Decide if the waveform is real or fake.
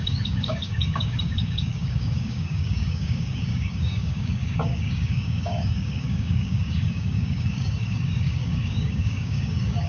fake